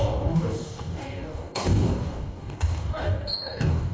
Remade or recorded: remade